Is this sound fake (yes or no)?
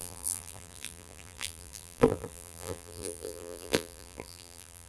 yes